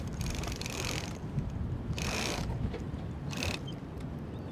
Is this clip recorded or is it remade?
recorded